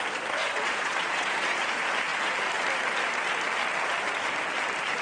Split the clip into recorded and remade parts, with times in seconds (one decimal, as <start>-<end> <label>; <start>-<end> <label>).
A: 0.0-0.4 recorded; 0.4-1.6 remade; 1.6-5.0 recorded